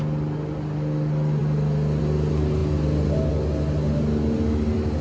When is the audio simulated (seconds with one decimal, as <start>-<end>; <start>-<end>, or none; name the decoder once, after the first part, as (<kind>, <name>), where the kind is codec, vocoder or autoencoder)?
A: none